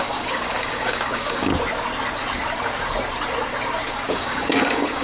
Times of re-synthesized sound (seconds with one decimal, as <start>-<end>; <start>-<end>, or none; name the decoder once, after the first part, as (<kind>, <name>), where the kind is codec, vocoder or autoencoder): 0.0-1.5 (codec, DAC); 4.1-5.0